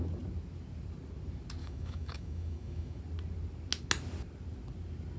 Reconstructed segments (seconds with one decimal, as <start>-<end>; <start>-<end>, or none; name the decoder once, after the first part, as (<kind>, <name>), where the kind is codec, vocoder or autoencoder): 1.6-3.0 (autoencoder, DAC-VAE)